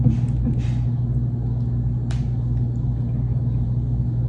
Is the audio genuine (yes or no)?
yes